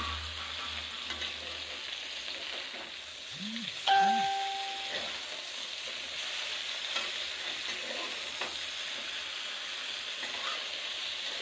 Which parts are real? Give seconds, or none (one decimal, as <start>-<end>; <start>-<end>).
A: 0.0-3.1; 4.1-11.4